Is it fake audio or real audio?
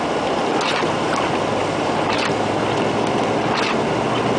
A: real